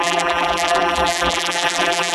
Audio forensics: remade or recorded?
remade